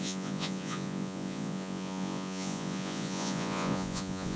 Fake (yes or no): yes